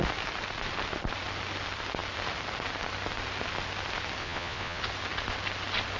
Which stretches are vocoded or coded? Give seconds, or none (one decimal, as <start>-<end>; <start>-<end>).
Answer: 4.2-4.8